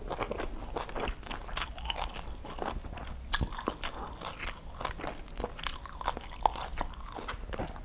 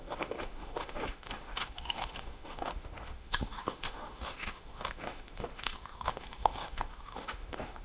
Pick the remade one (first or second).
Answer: second